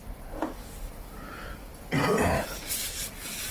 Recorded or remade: remade